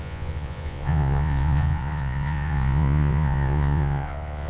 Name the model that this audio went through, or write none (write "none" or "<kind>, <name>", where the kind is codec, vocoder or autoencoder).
vocoder, Vocos